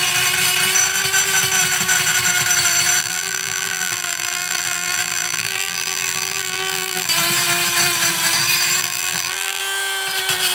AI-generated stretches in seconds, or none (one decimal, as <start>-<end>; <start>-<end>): 3.0-7.1; 8.8-9.6